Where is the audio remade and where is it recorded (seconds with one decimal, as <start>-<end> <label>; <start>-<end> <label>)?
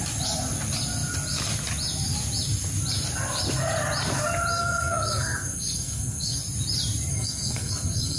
0.0-4.5 recorded; 4.5-6.4 remade; 6.4-7.1 recorded; 7.1-8.2 remade